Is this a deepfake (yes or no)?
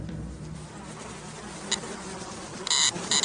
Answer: no